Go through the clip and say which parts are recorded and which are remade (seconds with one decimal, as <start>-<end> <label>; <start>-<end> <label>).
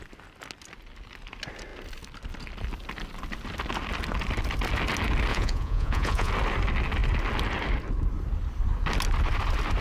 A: 0.0-5.3 recorded; 5.3-6.3 remade; 6.3-9.8 recorded